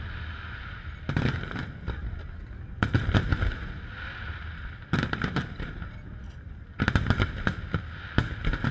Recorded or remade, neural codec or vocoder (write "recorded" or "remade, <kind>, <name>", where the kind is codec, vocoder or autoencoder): recorded